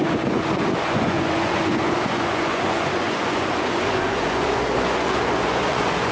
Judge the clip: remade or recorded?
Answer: remade